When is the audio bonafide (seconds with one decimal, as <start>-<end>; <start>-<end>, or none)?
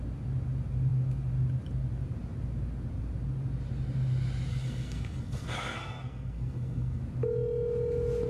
0.0-4.5; 7.0-8.3